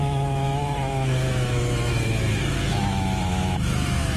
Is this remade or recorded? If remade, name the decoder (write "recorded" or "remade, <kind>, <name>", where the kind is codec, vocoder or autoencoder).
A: remade, autoencoder, DAC-VAE